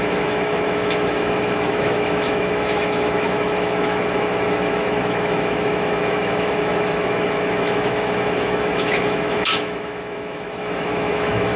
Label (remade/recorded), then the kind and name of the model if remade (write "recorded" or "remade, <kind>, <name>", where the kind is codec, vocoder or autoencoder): remade, autoencoder, DAC-VAE